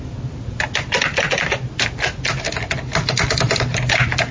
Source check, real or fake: real